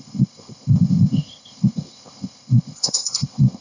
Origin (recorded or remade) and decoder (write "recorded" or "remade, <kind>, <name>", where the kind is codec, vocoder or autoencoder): remade, codec, ZipCodec